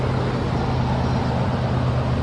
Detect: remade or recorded recorded